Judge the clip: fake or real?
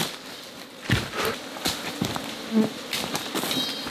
real